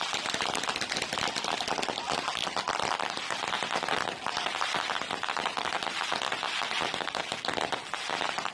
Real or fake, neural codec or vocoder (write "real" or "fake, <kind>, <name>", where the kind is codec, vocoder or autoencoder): real